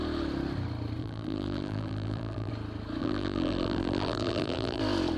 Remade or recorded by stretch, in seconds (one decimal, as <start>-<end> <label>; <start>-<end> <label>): 0.0-1.0 recorded; 1.0-2.5 remade; 2.5-3.0 recorded; 3.0-4.8 remade; 4.8-5.2 recorded